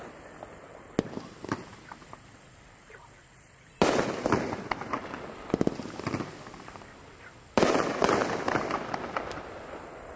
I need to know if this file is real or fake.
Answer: real